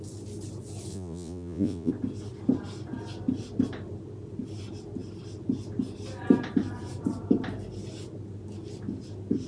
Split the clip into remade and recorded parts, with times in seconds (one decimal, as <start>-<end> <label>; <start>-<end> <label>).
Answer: 0.0-0.9 recorded; 0.9-1.9 remade; 1.9-9.5 recorded